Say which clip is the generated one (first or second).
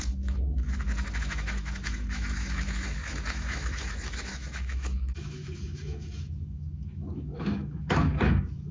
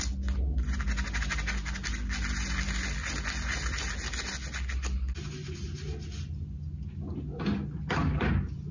first